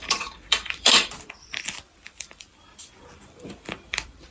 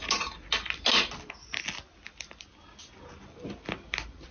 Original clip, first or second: second